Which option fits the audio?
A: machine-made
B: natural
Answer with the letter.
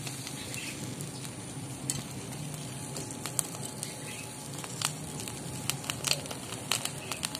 B